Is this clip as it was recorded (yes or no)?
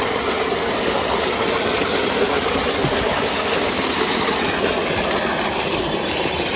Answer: yes